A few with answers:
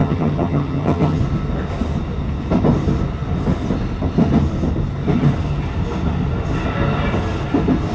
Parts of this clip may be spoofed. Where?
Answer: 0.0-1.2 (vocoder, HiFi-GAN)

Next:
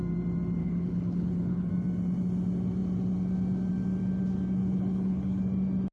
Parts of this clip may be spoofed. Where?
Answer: 0.6-1.7 (codec, HILCodec); 4.6-5.4

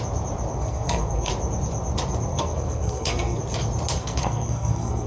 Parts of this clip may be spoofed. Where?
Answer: 0.5-1.3 (codec, SNAC); 2.3-3.4; 4.0-5.1

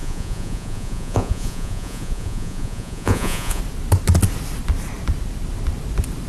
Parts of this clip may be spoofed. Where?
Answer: 0.0-3.6 (vocoder, Vocos)

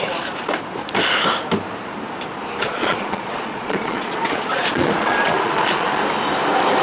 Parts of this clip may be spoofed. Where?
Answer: 2.6-6.0 (vocoder, Vocos)